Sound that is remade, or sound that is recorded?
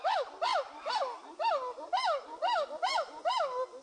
recorded